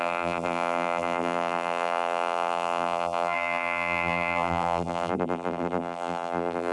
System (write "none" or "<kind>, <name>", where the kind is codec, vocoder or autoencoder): vocoder, BigVGAN v2